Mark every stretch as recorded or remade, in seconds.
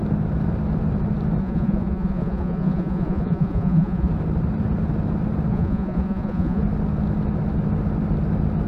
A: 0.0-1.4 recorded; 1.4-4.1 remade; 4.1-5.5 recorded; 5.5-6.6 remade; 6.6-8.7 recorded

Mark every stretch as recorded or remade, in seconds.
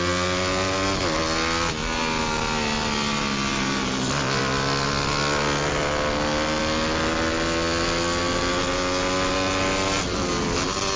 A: 0.0-11.0 recorded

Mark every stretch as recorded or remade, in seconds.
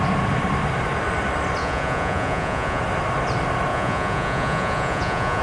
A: 0.0-1.6 recorded; 1.6-2.8 remade; 2.8-3.7 recorded; 3.7-5.4 remade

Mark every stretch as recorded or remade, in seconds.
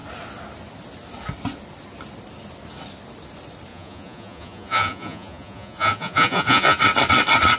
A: 0.0-3.7 recorded; 3.7-6.8 remade; 6.8-7.6 recorded